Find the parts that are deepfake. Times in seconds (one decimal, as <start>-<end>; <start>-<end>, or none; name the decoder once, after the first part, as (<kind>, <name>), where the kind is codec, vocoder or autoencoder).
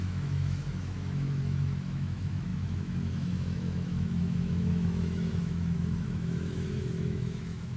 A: 0.0-7.8 (autoencoder, DAC-VAE)